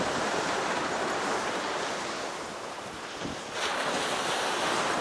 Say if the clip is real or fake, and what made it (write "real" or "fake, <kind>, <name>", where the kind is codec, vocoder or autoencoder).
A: real